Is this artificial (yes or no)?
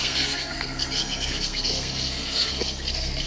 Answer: yes